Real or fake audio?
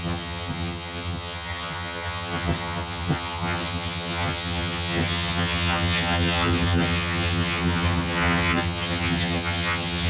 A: fake